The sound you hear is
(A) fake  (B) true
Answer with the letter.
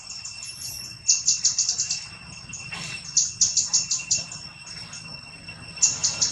B